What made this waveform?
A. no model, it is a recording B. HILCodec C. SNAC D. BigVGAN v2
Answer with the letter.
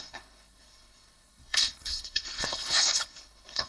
B